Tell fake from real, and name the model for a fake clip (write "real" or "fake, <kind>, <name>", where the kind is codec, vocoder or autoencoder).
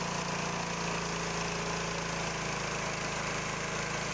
real